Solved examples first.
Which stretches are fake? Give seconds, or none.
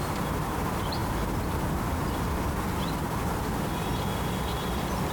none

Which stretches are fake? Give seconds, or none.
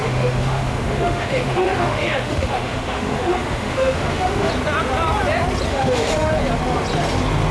0.0-4.5 (autoencoder, DAC-VAE); 5.7-6.3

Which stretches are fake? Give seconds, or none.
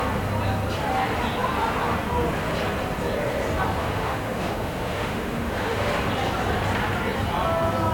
3.8-5.9 (autoencoder, DAC-VAE)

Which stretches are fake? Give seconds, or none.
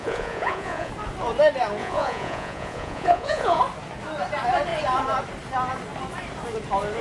0.0-0.9 (vocoder, Vocos); 1.8-3.6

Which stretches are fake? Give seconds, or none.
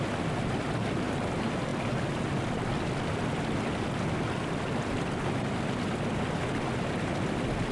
none